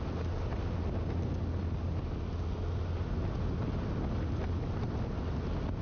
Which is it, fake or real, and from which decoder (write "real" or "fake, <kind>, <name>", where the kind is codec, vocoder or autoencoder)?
real